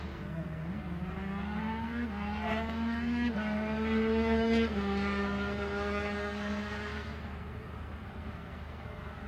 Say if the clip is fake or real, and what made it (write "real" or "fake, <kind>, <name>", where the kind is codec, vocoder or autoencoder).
fake, codec, SNAC